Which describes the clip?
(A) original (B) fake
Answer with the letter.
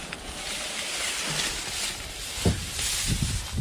A